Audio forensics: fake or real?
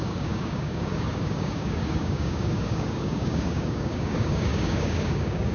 fake